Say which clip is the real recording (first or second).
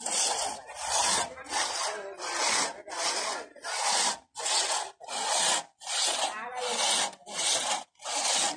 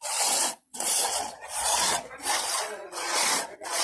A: first